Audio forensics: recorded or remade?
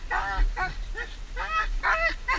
recorded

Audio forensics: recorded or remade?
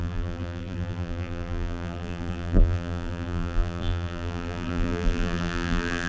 remade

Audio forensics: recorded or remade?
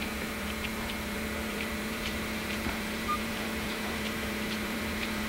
remade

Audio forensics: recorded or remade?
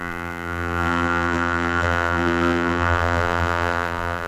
remade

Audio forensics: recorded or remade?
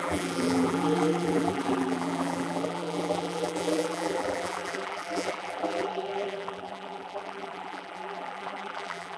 remade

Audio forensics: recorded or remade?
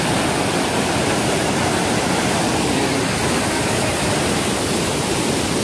remade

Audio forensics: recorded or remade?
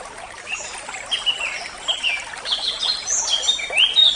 recorded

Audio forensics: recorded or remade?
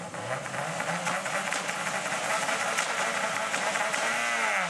recorded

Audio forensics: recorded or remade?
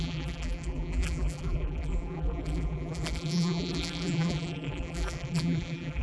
remade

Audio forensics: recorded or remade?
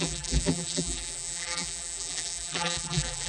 remade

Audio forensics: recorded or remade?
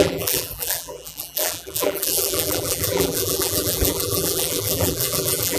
remade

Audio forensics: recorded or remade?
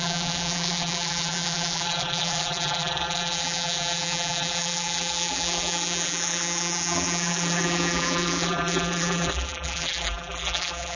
remade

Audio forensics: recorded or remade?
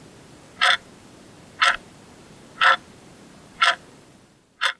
remade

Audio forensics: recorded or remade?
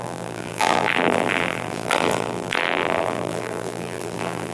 remade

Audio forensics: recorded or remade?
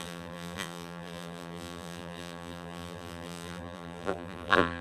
remade